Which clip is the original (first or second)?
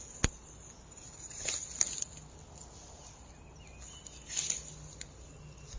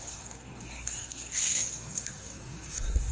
first